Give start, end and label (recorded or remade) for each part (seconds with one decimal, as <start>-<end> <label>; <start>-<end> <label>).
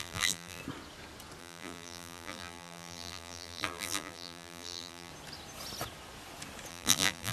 0.0-0.6 remade; 0.6-1.4 recorded; 1.4-5.1 remade; 5.1-6.7 recorded; 6.7-7.3 remade